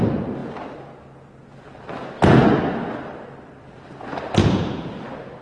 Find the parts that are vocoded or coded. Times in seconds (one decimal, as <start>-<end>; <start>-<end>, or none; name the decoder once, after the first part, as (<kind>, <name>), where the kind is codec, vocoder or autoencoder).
4.4-4.9 (vocoder, Vocos)